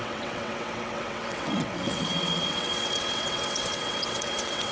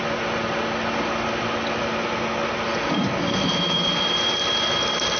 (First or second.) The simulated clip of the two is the first